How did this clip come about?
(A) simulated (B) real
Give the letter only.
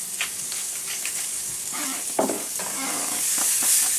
A